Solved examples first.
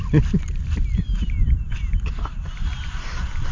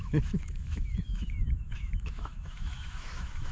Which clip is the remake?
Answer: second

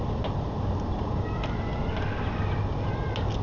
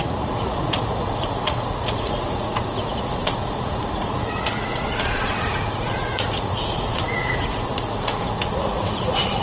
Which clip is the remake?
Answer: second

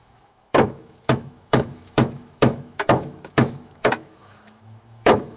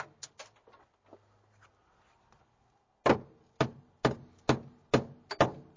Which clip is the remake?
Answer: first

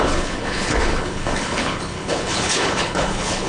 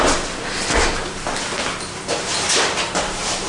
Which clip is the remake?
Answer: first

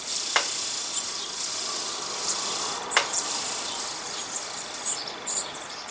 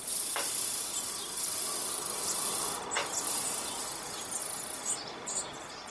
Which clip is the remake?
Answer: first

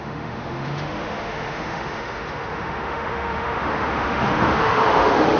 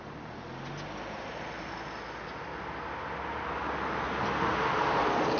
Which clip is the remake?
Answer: first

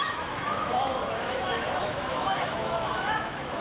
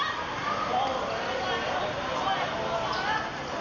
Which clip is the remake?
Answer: first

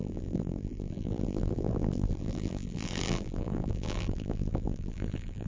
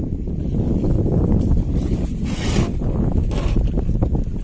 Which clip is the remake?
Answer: first